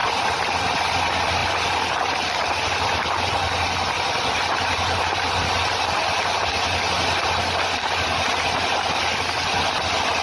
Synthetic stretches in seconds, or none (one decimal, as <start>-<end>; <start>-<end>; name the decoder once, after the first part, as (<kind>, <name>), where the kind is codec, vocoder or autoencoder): 0.0-0.8 (vocoder, BigVGAN v2)